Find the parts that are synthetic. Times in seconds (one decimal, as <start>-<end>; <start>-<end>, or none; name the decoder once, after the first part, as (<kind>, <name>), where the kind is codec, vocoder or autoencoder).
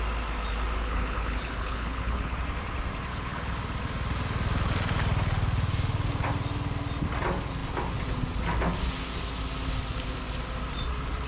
0.8-2.4 (codec, HILCodec); 3.1-3.6